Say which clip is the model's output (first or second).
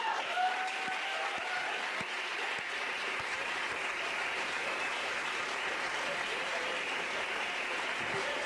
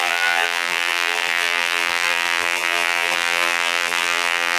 second